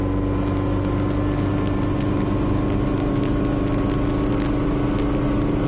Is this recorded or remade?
recorded